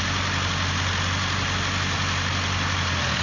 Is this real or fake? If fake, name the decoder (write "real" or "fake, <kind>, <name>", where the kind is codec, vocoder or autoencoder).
real